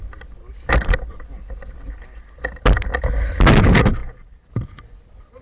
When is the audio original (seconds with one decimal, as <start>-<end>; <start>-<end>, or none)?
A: 0.0-4.0; 4.5-5.4